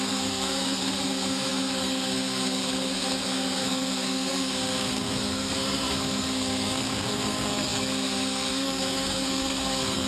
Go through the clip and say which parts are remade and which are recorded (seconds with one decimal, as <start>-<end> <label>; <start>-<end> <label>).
0.0-10.1 remade